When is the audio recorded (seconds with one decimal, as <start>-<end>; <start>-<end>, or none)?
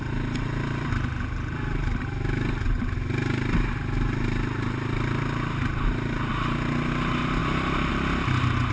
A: 0.0-8.7